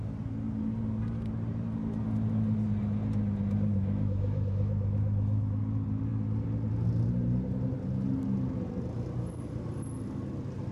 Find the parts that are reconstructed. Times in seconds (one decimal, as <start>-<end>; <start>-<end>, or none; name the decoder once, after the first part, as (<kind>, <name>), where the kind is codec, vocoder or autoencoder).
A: 3.7-5.6 (autoencoder, DAC-VAE)